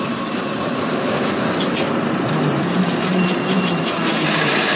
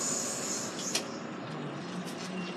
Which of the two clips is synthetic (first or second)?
first